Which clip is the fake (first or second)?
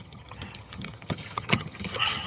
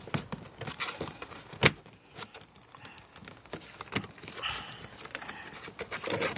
first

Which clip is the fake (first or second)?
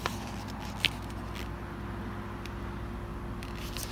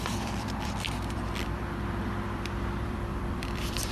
second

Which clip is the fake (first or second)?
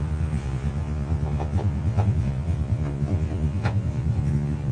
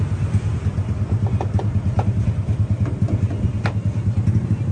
first